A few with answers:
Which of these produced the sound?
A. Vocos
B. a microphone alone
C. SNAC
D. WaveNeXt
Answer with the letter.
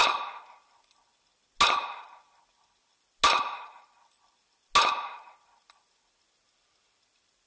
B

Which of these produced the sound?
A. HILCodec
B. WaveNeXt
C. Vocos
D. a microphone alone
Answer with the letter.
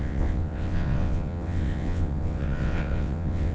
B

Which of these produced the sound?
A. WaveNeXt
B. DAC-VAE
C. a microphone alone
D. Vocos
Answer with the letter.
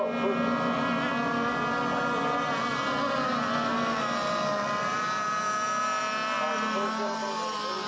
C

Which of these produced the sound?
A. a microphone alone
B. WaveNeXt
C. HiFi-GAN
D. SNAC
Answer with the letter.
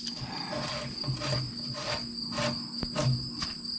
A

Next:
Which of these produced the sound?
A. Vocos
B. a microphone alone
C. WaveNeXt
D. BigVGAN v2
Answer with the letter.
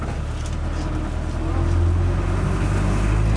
B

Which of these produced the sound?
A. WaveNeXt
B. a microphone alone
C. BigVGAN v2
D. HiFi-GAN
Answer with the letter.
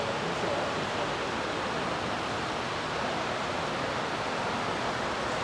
B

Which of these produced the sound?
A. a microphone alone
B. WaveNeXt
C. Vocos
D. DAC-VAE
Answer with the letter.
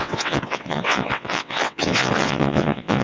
B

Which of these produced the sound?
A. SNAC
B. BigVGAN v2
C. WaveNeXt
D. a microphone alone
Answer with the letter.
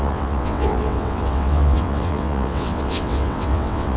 C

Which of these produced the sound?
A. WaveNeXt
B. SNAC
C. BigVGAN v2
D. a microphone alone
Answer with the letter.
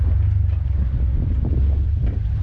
D